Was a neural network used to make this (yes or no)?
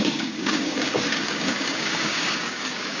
yes